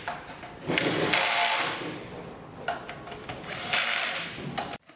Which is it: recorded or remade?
remade